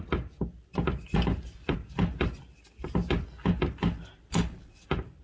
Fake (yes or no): no